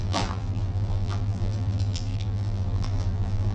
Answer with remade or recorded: remade